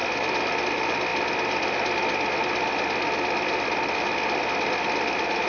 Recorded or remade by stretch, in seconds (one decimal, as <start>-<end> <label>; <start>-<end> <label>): 0.0-5.5 recorded